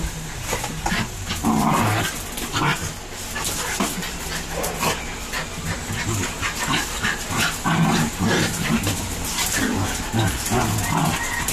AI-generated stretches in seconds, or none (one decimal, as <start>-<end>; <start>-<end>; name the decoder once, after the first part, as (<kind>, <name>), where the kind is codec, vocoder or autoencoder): none